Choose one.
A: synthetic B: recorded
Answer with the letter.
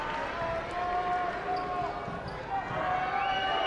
B